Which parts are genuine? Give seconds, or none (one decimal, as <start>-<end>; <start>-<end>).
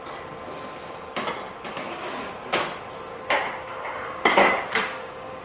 0.0-1.7; 2.3-3.7